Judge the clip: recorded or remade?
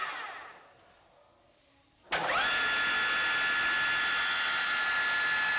recorded